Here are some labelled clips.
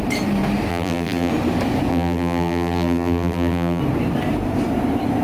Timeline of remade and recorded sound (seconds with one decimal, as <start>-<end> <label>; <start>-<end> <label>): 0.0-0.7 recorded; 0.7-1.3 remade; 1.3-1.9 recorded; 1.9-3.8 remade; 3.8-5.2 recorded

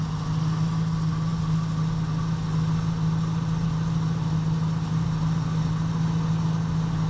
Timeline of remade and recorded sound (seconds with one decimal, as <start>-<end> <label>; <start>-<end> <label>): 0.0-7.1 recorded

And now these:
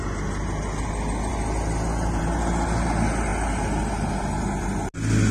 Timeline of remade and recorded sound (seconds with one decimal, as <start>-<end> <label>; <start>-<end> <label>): 0.0-5.3 recorded

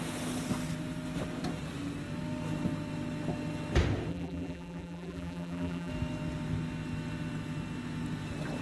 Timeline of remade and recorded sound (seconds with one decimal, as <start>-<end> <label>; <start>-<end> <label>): 0.0-4.1 recorded; 4.1-5.9 remade; 5.9-8.6 recorded